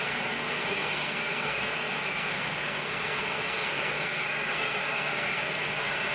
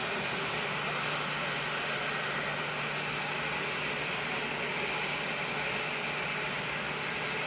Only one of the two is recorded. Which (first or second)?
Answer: second